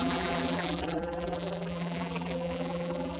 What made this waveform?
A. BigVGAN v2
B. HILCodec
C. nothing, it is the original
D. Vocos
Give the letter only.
A